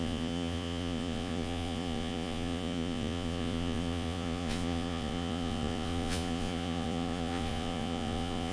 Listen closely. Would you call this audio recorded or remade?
remade